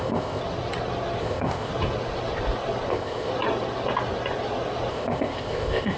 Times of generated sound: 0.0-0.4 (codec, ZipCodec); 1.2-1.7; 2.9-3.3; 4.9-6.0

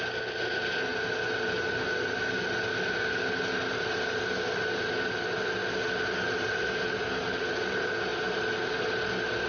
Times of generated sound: none

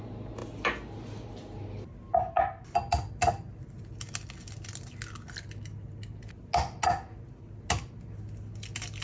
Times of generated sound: none

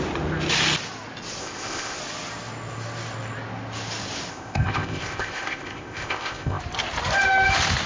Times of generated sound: 1.4-2.0 (codec, ZipCodec); 4.3-6.6

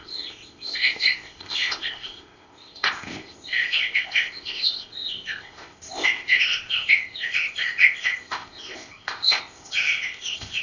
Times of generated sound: 0.0-10.6 (codec, ZipCodec)